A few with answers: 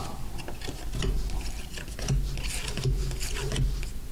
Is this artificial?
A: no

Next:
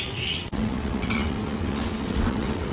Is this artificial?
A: yes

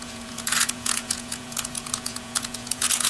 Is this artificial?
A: yes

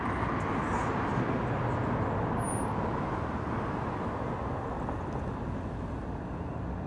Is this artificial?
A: no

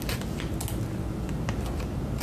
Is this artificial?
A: no